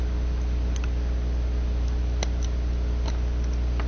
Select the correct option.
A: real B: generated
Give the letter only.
A